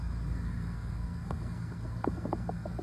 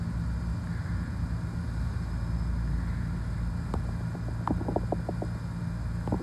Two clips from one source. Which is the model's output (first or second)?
first